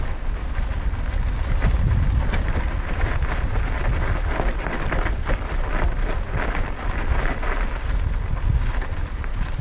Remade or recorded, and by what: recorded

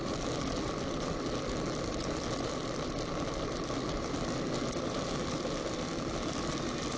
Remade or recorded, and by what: recorded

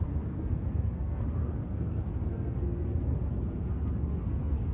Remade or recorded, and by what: remade, codec, SNAC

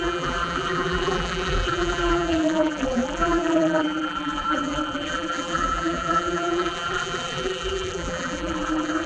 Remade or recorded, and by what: remade, vocoder, BigVGAN v2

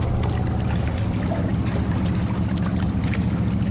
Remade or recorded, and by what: recorded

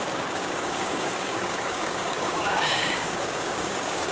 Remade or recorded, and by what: remade, codec, DAC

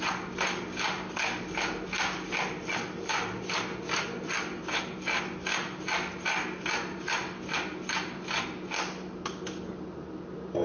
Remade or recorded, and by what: recorded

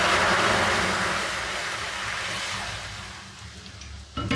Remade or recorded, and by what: recorded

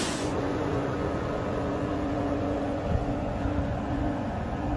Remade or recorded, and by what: remade, vocoder, Vocos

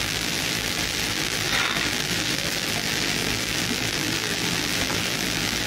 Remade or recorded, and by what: remade, vocoder, BigVGAN v2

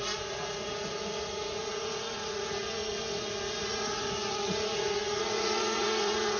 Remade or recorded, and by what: remade, vocoder, Vocos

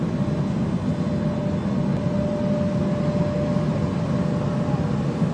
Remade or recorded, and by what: recorded